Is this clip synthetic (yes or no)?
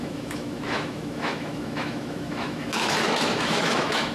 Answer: yes